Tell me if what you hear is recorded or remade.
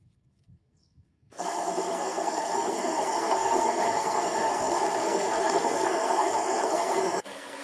remade